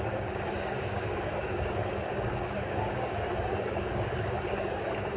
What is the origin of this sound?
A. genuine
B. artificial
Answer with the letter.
B